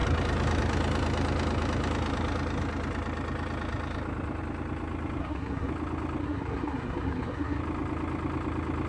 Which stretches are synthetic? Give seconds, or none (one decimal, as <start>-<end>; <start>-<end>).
5.2-5.7; 6.2-7.6

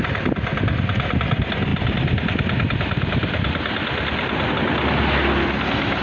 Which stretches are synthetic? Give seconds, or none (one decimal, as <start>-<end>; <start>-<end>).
none

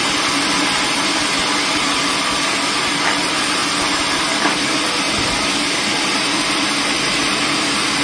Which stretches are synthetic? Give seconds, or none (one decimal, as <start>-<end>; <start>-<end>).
none